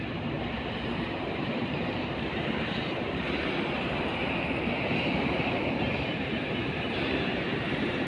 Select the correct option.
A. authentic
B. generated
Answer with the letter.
B